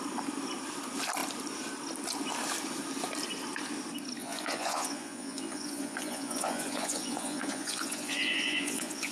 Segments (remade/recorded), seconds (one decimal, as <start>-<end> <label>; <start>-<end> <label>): 0.0-4.2 recorded; 4.2-9.1 remade